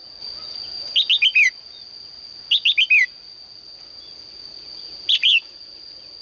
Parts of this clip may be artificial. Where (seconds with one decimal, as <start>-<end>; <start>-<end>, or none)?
none